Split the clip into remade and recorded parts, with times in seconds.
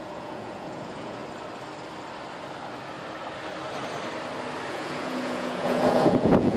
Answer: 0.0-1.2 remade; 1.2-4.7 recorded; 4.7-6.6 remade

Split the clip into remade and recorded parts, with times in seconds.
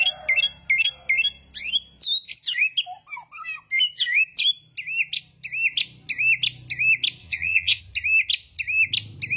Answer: 0.0-7.2 recorded; 7.2-7.8 remade; 7.8-9.4 recorded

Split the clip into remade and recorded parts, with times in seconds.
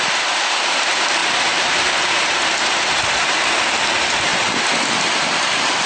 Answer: 0.0-5.9 recorded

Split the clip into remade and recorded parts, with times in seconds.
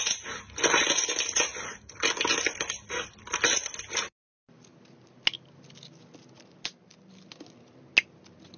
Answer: 0.0-8.6 recorded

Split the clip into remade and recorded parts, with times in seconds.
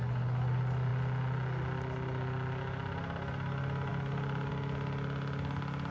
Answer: 0.0-5.9 recorded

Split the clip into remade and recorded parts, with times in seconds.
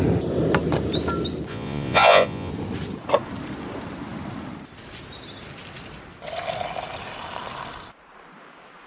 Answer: 0.0-1.5 recorded; 1.5-2.5 remade; 2.5-8.9 recorded